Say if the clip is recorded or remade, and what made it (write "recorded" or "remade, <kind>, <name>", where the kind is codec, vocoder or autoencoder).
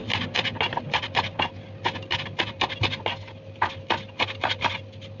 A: recorded